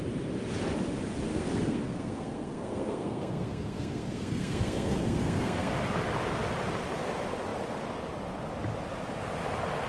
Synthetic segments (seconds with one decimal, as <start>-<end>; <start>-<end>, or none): 1.3-5.7